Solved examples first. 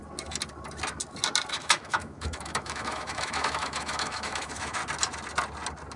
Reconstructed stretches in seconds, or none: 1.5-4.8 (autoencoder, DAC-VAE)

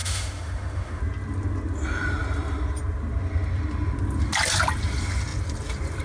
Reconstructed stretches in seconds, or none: 0.0-1.0 (autoencoder, DAC-VAE)